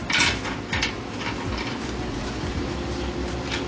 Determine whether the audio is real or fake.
real